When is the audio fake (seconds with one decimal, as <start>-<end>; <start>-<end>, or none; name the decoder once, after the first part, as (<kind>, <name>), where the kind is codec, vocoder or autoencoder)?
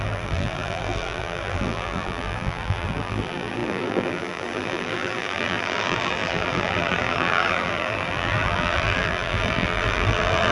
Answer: 0.0-10.5 (vocoder, BigVGAN v2)